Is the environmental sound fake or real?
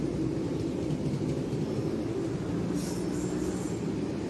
real